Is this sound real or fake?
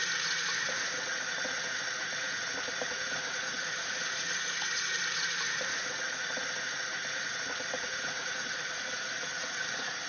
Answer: fake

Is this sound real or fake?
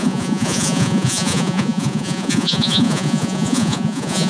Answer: fake